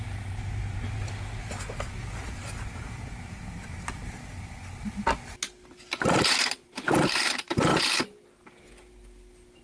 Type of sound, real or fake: real